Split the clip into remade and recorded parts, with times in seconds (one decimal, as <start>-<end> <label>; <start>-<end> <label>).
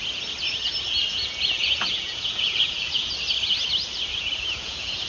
0.0-1.1 recorded; 1.1-3.1 remade; 3.1-4.1 recorded; 4.1-5.1 remade